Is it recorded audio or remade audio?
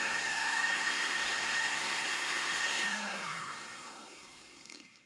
remade